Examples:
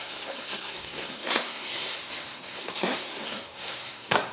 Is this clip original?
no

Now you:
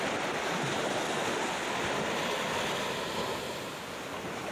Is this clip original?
yes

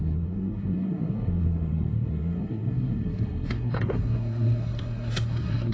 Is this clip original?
no